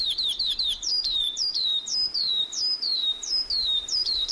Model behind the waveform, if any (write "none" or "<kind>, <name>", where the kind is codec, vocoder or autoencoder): vocoder, BigVGAN v2